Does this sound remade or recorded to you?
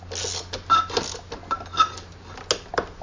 recorded